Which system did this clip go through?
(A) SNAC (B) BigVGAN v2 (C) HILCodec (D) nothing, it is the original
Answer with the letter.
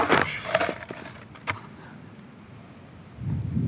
D